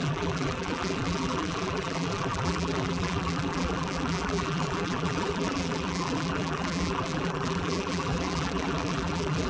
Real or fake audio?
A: fake